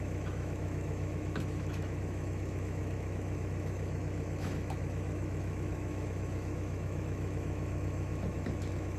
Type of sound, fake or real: fake